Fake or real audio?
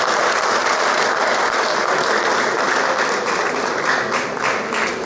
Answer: real